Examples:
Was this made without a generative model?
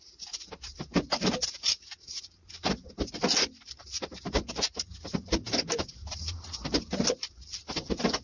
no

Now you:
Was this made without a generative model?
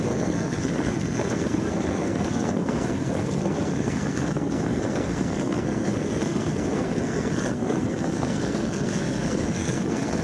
no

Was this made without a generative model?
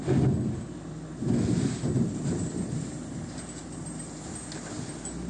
yes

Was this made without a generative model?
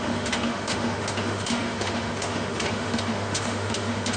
no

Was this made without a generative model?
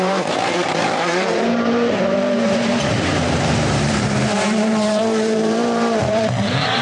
no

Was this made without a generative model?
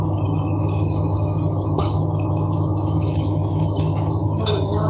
no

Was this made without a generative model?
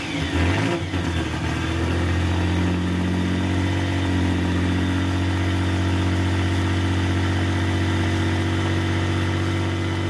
yes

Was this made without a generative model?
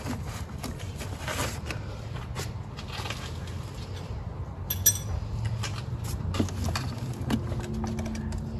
yes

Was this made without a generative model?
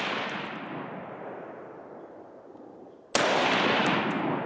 yes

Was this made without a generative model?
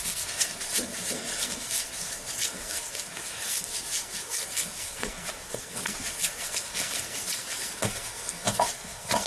no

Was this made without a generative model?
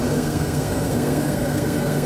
no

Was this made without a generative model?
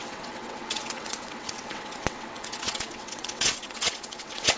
no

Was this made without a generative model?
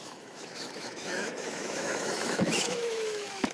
no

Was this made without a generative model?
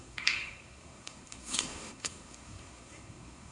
no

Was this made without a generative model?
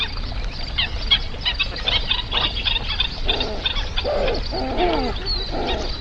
yes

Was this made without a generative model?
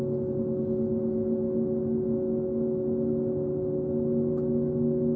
yes